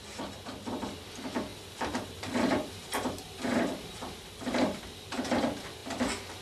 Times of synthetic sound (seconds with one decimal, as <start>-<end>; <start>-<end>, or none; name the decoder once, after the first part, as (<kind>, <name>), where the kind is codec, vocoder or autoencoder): 1.5-4.8 (vocoder, BigVGAN v2)